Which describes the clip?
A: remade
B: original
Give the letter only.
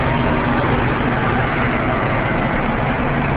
B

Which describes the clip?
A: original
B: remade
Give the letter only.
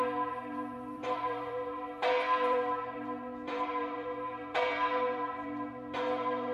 B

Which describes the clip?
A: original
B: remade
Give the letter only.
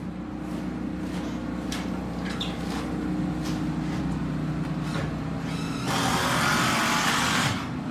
A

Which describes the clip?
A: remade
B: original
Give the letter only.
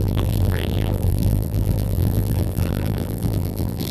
A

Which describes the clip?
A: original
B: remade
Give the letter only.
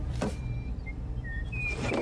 B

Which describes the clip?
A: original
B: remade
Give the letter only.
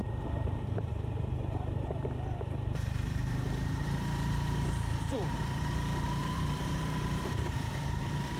B